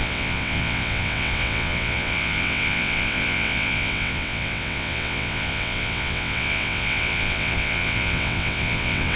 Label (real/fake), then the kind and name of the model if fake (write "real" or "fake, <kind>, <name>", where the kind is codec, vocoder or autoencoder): fake, vocoder, WaveNeXt